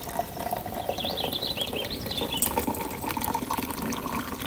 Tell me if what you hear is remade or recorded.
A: remade